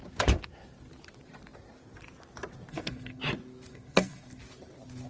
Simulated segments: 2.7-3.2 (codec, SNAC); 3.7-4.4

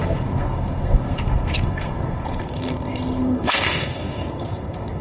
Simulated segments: 0.0-5.0 (codec, SNAC)

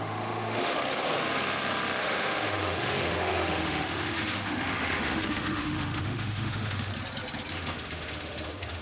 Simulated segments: 0.0-0.8 (autoencoder, DAC-VAE); 2.0-6.9; 7.5-8.8

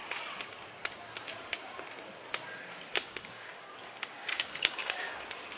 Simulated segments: 3.0-3.8 (codec, DAC); 4.3-5.1

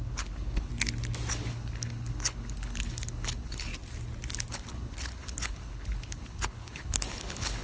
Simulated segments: 0.0-0.7 (codec, HILCodec); 1.3-3.7; 4.5-7.6

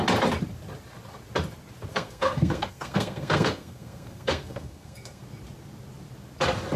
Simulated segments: 1.9-5.2 (codec, SNAC)

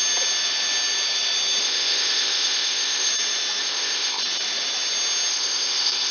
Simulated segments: 1.6-3.1 (codec, ZipCodec); 3.6-4.2; 5.3-6.1